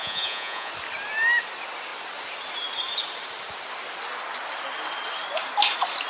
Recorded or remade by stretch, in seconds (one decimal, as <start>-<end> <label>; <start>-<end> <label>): 0.0-0.7 remade; 0.7-6.1 recorded